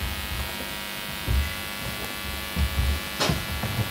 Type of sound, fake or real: real